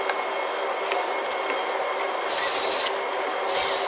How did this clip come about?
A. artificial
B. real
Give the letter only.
B